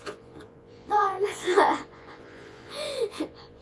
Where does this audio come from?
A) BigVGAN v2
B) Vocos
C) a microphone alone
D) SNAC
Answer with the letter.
B